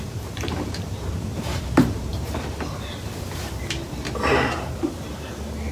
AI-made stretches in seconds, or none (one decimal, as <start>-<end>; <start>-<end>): 0.0-2.1; 3.2-5.7